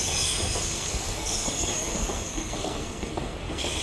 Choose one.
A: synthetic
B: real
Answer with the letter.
A